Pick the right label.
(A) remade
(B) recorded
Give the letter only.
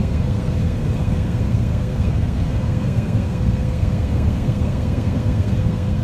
A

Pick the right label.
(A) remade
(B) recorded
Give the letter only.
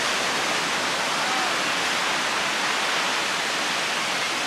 B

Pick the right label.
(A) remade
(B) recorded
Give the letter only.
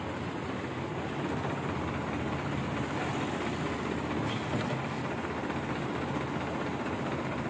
B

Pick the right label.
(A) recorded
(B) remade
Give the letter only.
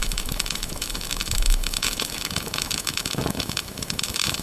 B